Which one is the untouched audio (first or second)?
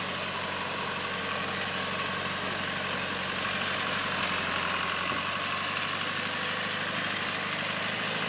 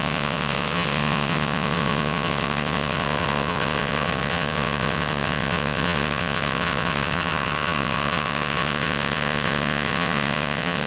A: first